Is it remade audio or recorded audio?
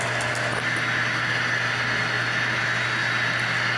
recorded